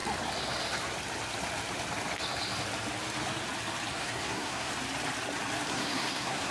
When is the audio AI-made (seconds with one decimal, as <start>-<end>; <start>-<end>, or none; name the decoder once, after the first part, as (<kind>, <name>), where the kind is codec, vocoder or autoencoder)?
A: 3.9-4.7 (codec, SNAC); 5.7-6.5

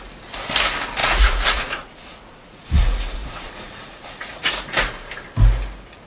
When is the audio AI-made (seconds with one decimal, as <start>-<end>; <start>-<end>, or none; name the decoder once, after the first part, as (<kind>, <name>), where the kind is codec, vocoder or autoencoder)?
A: 1.0-4.5 (vocoder, Vocos)

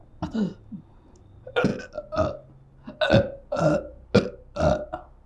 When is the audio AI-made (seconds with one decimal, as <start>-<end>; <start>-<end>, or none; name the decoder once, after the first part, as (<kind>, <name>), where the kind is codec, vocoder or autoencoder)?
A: none